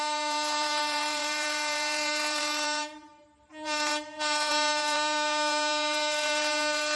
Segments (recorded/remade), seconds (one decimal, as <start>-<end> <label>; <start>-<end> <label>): 0.0-7.0 remade